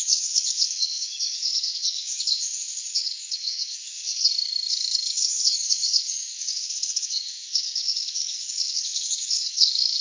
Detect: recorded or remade remade